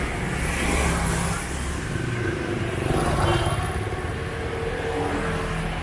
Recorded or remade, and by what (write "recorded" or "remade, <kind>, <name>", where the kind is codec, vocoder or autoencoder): recorded